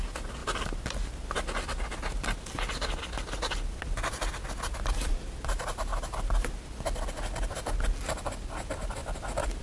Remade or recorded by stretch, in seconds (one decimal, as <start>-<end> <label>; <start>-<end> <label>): 0.0-9.6 recorded